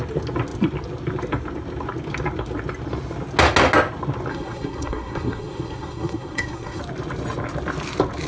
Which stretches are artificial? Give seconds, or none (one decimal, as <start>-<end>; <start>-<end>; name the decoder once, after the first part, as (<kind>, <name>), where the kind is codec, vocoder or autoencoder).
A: 4.3-6.8 (codec, SNAC)